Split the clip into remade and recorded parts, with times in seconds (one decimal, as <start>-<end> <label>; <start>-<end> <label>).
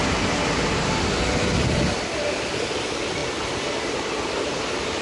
0.0-5.0 recorded